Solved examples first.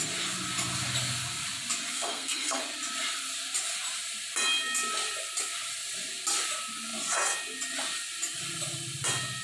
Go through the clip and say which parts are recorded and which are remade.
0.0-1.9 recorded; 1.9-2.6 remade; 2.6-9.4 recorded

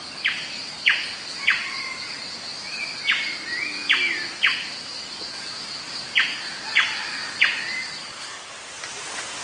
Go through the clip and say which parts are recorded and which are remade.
0.0-8.0 recorded; 8.0-8.5 remade; 8.5-9.4 recorded

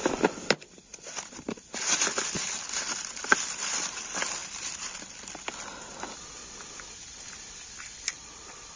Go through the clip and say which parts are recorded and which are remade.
0.0-4.4 remade; 4.4-8.1 recorded; 8.1-8.8 remade

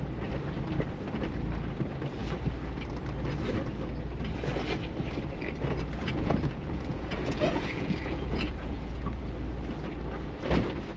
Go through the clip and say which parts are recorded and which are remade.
0.0-6.0 recorded; 6.0-9.2 remade; 9.2-11.0 recorded

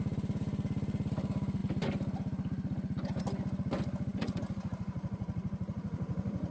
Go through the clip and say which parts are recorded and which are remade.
0.0-4.1 recorded; 4.1-6.5 remade

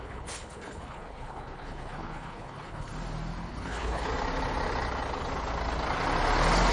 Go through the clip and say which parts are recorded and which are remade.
0.0-2.9 remade; 2.9-3.5 recorded; 3.5-4.1 remade; 4.1-6.7 recorded